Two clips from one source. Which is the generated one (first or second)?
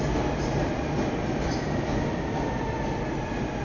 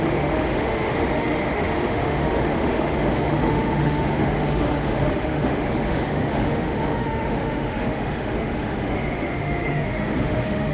second